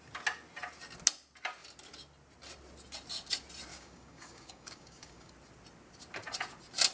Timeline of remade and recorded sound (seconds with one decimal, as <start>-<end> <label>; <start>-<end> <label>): 0.0-3.7 recorded; 3.7-5.3 remade; 5.3-6.9 recorded